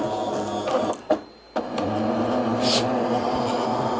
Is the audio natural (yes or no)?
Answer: yes